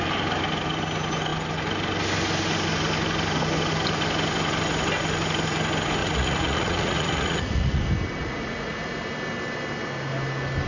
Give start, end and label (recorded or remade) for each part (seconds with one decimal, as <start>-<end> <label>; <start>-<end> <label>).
0.0-6.0 recorded; 6.0-7.8 remade; 7.8-8.2 recorded; 8.2-9.0 remade; 9.0-10.7 recorded